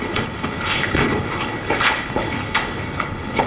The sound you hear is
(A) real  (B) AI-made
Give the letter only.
B